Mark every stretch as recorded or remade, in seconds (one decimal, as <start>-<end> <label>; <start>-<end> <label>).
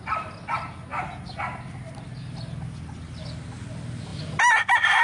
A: 0.0-5.0 recorded